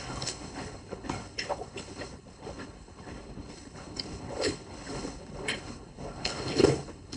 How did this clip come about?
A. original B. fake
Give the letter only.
B